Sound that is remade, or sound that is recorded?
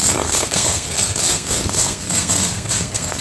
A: remade